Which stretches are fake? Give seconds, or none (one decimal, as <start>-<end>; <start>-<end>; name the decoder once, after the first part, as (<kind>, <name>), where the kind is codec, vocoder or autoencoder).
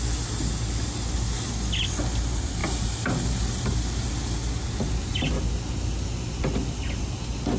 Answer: none